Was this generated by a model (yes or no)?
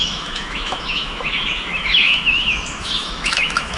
yes